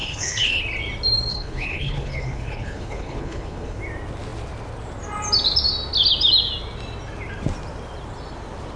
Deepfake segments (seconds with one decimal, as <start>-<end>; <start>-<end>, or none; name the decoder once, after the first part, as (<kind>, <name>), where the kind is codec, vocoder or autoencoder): 0.0-0.6 (codec, HILCodec); 1.3-3.8